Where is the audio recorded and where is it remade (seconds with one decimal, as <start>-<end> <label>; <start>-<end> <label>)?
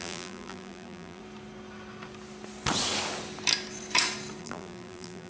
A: 0.0-1.2 remade; 1.2-4.4 recorded; 4.4-5.3 remade